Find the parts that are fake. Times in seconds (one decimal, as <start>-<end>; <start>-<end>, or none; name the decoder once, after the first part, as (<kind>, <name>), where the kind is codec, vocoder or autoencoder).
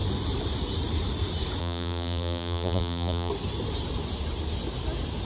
1.6-3.3 (vocoder, BigVGAN v2)